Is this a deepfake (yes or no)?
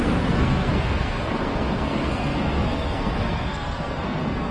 yes